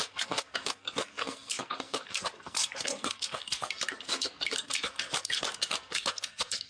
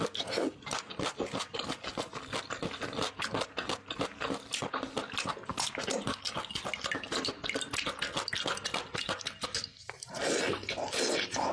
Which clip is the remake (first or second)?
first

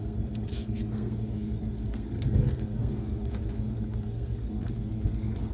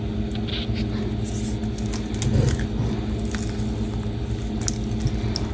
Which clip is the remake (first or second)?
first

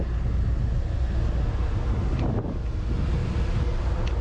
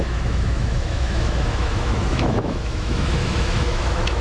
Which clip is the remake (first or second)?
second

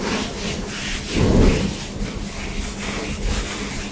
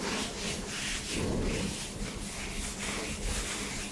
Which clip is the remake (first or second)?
second